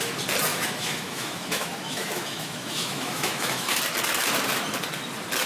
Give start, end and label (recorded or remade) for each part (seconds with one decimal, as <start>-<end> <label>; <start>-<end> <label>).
0.0-0.5 recorded; 0.5-3.8 remade; 3.8-5.5 recorded